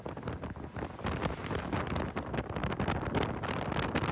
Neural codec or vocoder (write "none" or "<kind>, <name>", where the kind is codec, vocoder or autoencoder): none